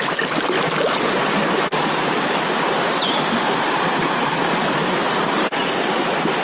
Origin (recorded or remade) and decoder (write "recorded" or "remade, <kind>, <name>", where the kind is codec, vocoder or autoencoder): recorded